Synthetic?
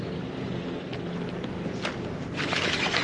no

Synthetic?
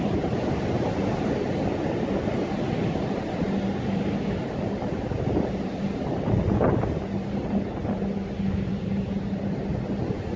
no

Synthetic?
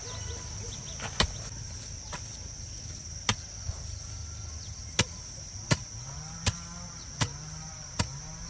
no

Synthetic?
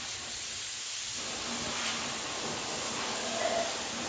no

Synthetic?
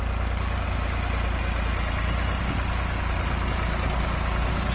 no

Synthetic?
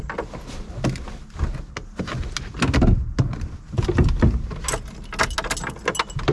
no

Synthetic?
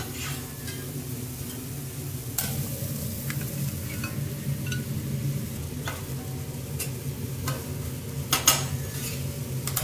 no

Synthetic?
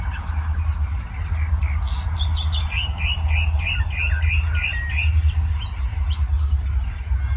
no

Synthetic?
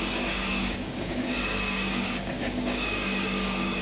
yes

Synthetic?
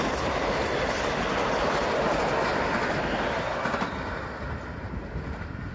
no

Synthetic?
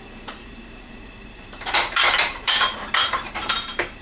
yes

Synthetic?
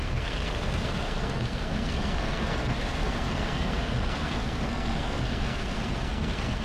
yes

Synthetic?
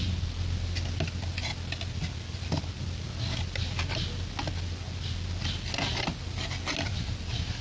no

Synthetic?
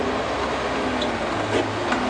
no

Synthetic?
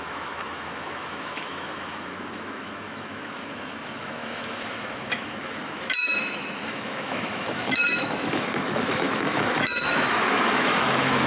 yes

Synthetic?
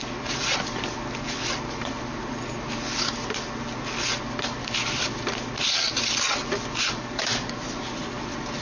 no